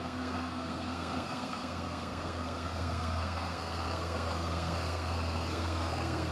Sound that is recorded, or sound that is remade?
remade